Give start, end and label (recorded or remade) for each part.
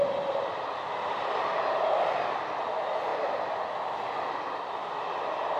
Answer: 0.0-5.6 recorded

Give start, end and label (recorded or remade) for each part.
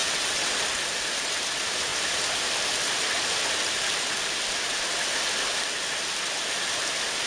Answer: 0.0-0.5 remade; 0.5-7.3 recorded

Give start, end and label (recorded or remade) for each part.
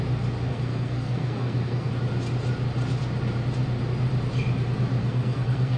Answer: 0.0-0.5 recorded; 0.5-1.9 remade; 1.9-5.0 recorded; 5.0-5.8 remade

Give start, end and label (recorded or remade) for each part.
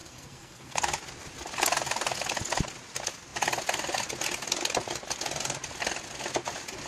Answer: 0.0-0.8 remade; 0.8-6.9 recorded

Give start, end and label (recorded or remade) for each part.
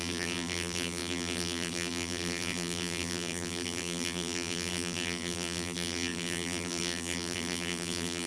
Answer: 0.0-8.3 remade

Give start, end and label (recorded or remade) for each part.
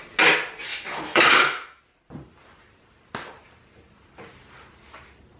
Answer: 0.0-0.7 recorded; 0.7-1.8 remade; 1.8-5.4 recorded